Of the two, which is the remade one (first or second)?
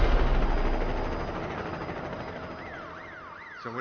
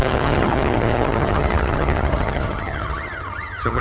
second